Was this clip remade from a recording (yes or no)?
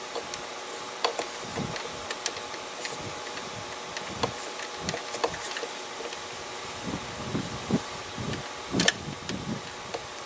yes